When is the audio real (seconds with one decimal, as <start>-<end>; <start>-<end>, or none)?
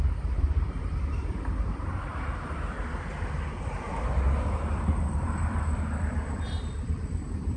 2.1-5.1